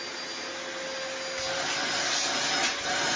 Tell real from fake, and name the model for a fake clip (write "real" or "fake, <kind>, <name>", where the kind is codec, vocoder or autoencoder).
real